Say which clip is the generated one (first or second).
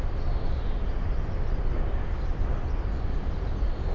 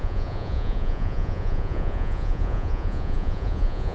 second